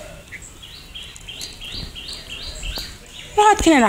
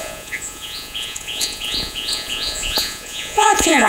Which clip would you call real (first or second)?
first